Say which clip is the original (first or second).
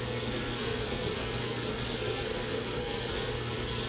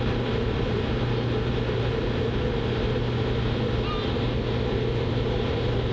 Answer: second